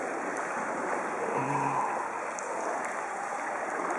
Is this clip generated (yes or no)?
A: no